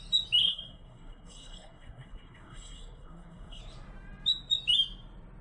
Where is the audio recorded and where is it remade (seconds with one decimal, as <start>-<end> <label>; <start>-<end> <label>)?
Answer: 0.0-0.4 recorded; 0.4-3.6 remade; 3.6-5.4 recorded